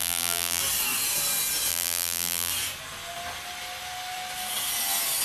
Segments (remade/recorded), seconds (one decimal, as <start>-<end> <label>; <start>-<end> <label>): 0.0-0.6 remade; 0.6-1.7 recorded; 1.7-2.5 remade; 2.5-5.2 recorded